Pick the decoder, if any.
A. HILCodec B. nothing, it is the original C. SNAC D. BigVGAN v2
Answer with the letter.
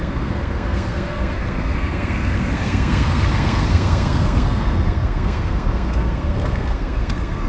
C